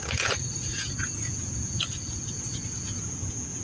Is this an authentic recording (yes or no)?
no